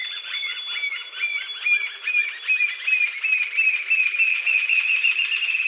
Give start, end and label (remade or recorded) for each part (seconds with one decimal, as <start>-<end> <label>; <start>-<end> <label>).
0.0-0.6 remade; 0.6-4.3 recorded; 4.3-4.9 remade; 4.9-5.7 recorded